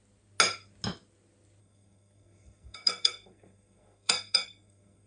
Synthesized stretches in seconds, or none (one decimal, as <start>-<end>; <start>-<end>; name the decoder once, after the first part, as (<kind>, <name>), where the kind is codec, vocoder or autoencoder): 1.6-5.1 (codec, SNAC)